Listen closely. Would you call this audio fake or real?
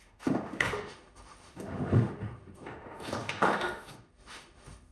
fake